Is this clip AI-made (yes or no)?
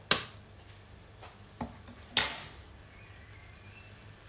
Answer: no